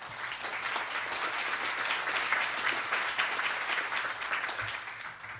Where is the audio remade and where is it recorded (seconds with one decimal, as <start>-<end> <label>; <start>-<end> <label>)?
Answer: 0.0-2.3 recorded; 2.3-3.8 remade; 3.8-5.4 recorded